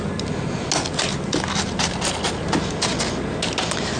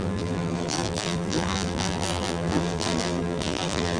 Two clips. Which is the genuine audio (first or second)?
first